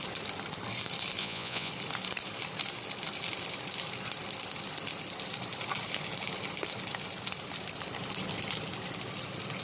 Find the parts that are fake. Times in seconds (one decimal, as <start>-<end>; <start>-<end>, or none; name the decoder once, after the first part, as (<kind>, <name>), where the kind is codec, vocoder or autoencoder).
1.2-1.7 (vocoder, Vocos)